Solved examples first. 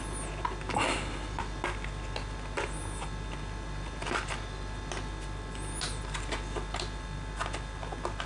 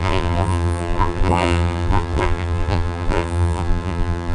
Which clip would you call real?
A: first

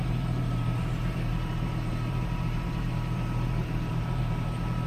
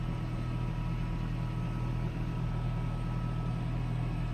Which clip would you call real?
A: second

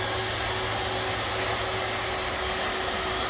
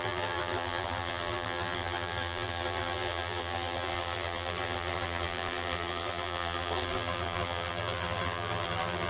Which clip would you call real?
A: first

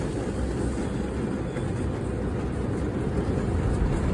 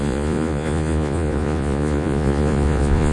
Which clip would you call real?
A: first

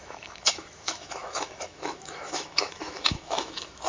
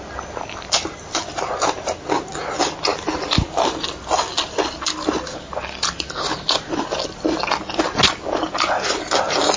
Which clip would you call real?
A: second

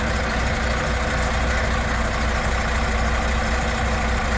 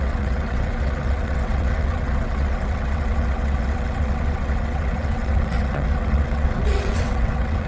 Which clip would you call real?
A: first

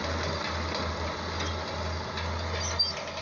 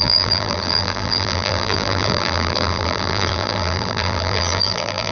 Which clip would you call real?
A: first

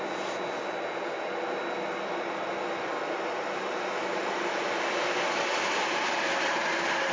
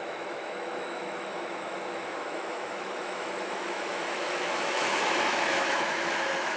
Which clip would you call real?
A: first